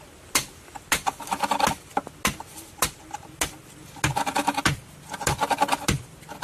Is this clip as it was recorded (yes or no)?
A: yes